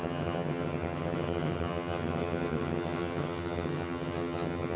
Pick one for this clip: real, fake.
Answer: fake